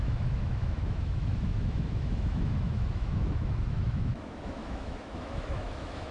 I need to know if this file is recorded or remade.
remade